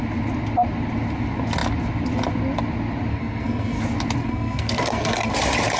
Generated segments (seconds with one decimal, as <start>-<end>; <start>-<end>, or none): 3.1-3.8; 4.2-5.3